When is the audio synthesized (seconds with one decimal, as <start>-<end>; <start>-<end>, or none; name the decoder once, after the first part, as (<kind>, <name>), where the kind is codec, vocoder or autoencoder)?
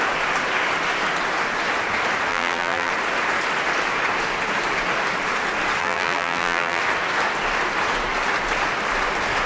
2.3-2.9 (vocoder, BigVGAN v2); 5.8-6.8